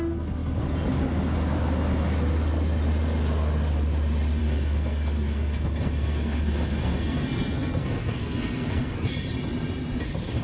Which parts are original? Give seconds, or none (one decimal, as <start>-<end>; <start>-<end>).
0.0-4.4; 9.1-10.4